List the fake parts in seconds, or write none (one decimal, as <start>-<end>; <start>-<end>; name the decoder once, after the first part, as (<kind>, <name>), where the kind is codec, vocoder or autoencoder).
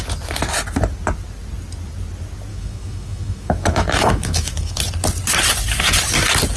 2.5-4.8 (autoencoder, DAC-VAE)